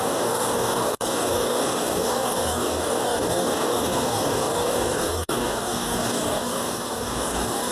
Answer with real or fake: fake